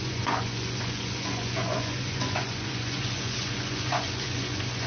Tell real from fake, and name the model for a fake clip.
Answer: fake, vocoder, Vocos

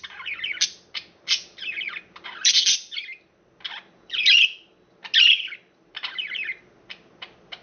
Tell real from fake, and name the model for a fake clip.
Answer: real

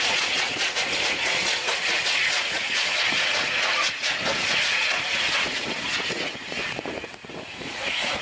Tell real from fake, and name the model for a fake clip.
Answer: fake, vocoder, Vocos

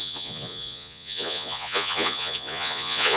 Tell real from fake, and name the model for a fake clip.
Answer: fake, vocoder, Vocos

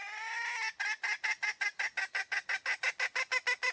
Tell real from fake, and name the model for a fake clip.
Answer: real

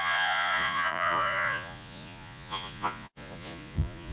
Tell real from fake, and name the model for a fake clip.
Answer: fake, vocoder, Vocos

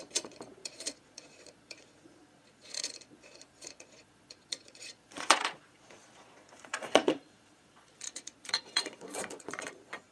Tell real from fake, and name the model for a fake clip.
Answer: fake, vocoder, Vocos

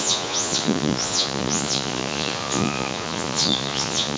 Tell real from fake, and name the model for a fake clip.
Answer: fake, vocoder, Vocos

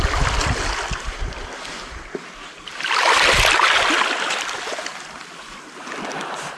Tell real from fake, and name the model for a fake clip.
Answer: real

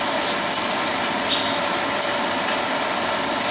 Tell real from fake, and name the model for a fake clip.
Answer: real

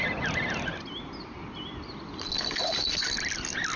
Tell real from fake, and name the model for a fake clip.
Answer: real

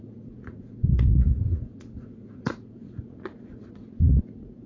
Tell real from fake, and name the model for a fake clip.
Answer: fake, vocoder, Vocos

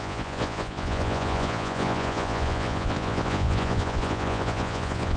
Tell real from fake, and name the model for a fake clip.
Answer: fake, vocoder, Vocos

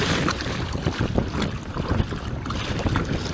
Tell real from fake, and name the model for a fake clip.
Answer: real